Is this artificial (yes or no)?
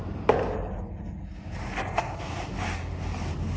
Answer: no